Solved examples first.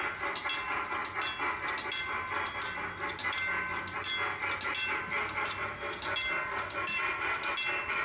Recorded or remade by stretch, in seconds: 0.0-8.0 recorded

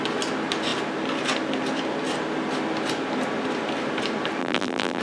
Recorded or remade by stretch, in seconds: 0.0-4.4 recorded; 4.4-5.0 remade

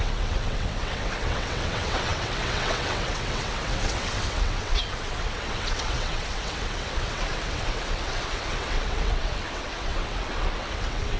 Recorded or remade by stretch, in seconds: 0.0-11.2 remade

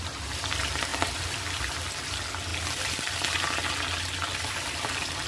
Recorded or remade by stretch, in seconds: 0.0-5.3 recorded

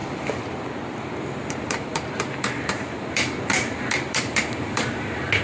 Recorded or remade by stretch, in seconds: 0.0-1.5 recorded; 1.5-5.4 remade